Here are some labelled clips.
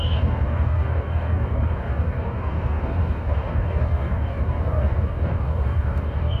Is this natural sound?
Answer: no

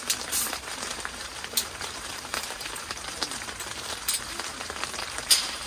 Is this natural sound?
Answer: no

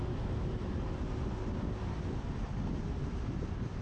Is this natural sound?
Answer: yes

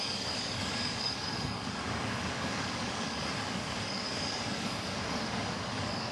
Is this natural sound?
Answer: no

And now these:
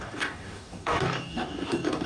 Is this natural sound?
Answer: no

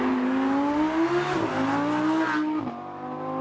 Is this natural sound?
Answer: yes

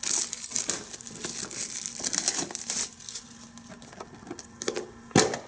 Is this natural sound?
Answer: yes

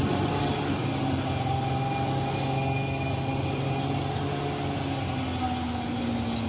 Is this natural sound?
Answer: yes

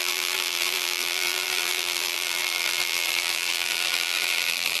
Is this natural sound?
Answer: no